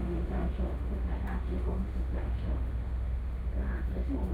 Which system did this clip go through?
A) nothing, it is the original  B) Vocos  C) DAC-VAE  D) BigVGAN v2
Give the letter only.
C